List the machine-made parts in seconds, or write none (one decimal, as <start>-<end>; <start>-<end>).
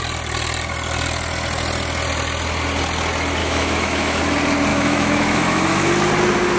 3.4-4.2; 4.7-5.9